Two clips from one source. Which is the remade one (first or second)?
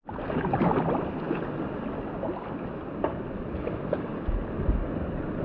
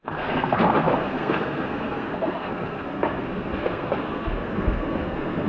second